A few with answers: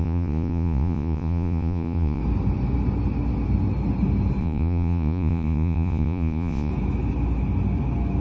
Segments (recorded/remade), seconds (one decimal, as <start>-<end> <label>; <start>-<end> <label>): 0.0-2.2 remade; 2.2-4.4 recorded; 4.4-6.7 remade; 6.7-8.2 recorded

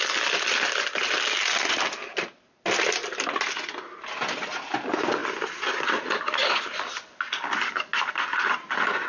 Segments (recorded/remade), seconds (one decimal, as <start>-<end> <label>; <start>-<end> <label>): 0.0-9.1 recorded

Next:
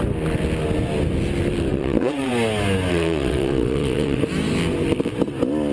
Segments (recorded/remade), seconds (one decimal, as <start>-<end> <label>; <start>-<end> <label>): 0.0-1.7 recorded; 1.7-2.3 remade; 2.3-2.9 recorded; 2.9-4.2 remade; 4.2-5.7 recorded

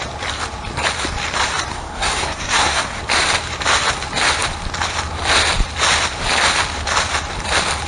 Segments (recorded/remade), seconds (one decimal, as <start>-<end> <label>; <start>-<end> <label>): 0.0-1.7 recorded; 1.7-3.0 remade; 3.0-7.9 recorded